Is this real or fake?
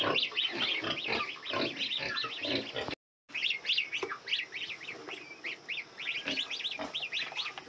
real